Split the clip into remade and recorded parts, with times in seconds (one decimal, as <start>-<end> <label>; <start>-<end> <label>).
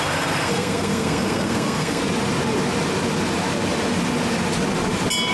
0.0-2.0 remade; 2.0-5.3 recorded